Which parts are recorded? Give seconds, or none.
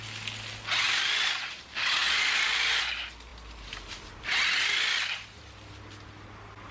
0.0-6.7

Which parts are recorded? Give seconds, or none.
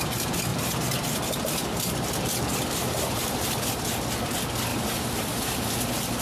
0.0-0.5; 1.2-1.6; 2.1-2.5; 3.7-4.7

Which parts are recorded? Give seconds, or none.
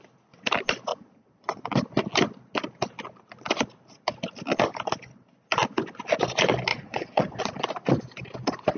0.0-0.9; 1.6-6.7; 7.4-8.8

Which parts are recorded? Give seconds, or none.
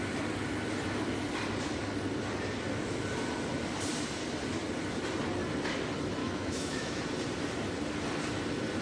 0.0-6.2; 7.0-8.8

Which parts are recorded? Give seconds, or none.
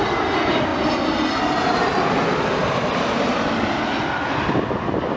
0.0-5.2